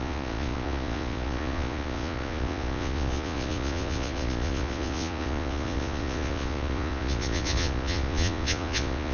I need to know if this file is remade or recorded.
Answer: remade